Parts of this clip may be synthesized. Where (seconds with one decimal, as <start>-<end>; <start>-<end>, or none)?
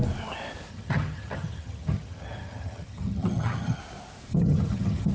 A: 0.7-3.8; 4.3-5.1